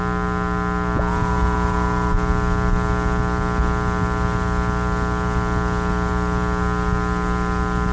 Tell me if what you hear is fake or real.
real